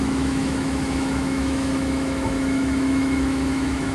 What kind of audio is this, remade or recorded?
remade